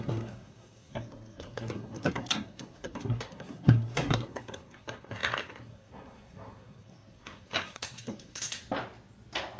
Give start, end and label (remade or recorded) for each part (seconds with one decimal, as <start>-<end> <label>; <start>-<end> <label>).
0.0-8.6 remade; 8.6-9.6 recorded